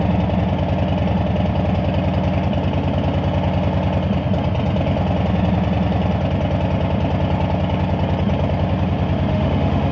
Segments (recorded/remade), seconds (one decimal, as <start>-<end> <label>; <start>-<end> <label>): 0.0-9.3 recorded; 9.3-9.9 remade

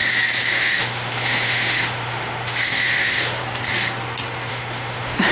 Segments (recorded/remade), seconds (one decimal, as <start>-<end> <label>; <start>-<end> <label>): 0.0-0.5 recorded; 0.5-3.4 remade; 3.4-4.5 recorded; 4.5-5.3 remade

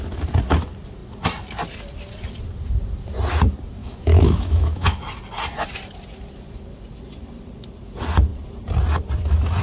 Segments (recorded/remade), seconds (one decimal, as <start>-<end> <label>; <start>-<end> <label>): 0.0-3.8 recorded; 3.8-5.0 remade; 5.0-9.6 recorded

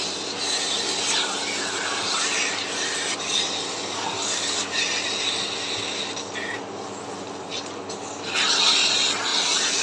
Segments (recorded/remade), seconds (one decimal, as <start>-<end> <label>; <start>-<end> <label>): 0.0-9.8 recorded

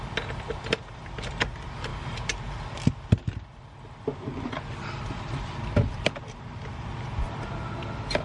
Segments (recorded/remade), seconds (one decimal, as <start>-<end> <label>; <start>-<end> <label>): 0.0-8.2 recorded

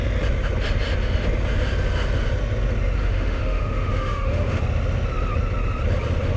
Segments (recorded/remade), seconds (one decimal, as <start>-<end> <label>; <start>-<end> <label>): 0.0-3.0 recorded; 3.0-4.6 remade; 4.6-6.4 recorded

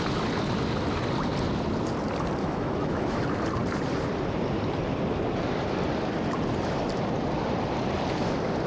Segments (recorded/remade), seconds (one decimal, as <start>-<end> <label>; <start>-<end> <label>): 0.0-2.4 recorded; 2.4-3.2 remade; 3.2-8.7 recorded

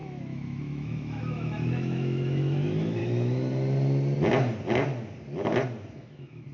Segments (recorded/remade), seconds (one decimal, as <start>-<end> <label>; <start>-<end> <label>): 0.0-3.0 remade; 3.0-5.9 recorded; 5.9-6.5 remade